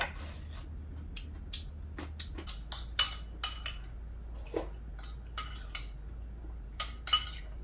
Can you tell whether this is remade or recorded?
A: recorded